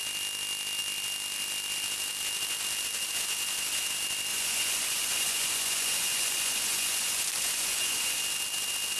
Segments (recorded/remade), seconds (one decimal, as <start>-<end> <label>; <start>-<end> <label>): 0.0-4.3 recorded; 4.3-8.2 remade; 8.2-9.0 recorded